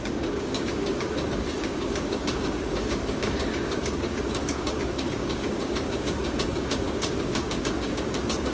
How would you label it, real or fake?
fake